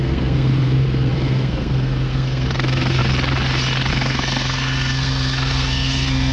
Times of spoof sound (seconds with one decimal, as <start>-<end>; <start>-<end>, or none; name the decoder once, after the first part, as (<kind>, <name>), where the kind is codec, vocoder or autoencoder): 0.0-3.0 (codec, SNAC); 3.9-6.3